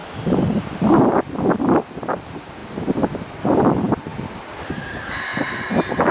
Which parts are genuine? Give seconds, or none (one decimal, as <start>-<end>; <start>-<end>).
1.0-5.3